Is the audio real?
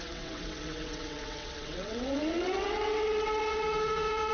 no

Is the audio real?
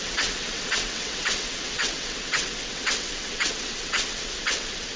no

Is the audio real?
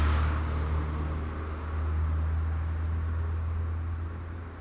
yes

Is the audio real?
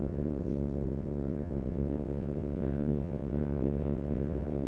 no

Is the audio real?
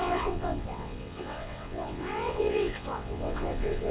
no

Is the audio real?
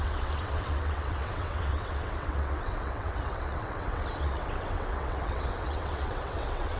no